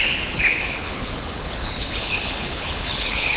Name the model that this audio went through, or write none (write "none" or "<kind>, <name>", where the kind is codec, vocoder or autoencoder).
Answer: codec, HILCodec